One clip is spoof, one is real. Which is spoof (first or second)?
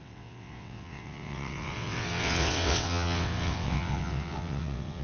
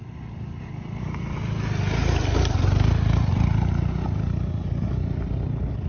first